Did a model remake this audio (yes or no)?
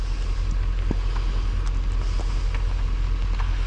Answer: no